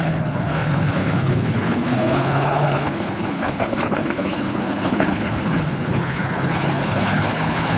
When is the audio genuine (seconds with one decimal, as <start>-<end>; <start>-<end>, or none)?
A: none